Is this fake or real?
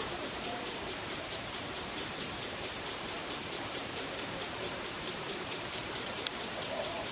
fake